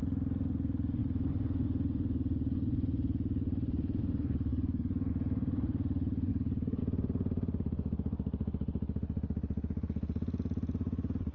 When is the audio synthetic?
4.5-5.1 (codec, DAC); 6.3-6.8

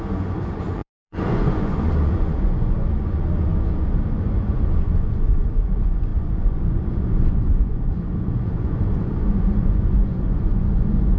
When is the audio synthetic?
0.0-11.2 (vocoder, Vocos)

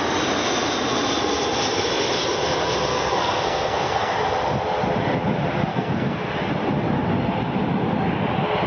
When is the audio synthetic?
2.9-4.1 (codec, SNAC); 5.7-6.3

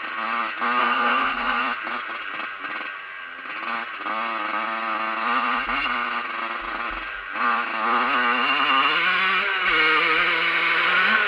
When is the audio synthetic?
0.8-1.6 (codec, SNAC)